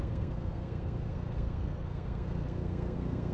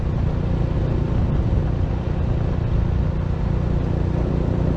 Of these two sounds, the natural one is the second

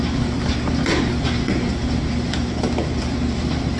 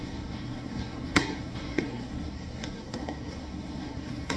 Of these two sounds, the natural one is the first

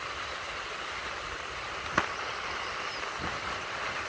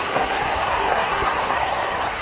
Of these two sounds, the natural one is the first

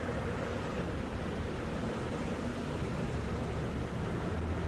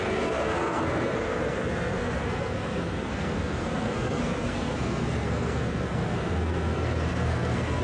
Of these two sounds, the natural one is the first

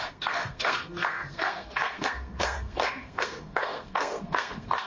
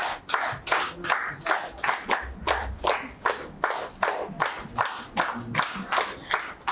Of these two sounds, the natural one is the second